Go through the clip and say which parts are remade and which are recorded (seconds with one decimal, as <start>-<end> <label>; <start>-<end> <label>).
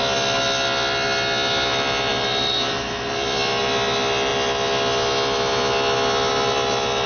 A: 0.0-7.1 recorded